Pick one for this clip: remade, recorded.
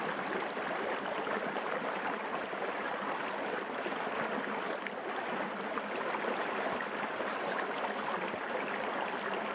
recorded